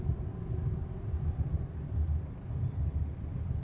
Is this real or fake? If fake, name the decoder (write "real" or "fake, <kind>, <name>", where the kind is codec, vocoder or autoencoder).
real